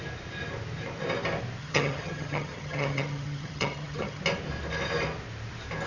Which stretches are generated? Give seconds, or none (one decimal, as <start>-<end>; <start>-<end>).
1.6-4.2